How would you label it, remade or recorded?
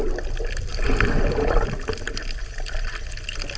recorded